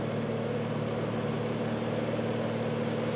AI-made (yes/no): no